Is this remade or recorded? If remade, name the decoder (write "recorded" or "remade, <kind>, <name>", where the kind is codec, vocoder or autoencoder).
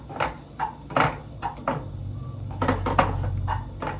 recorded